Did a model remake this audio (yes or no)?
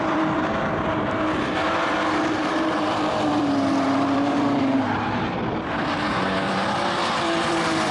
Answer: yes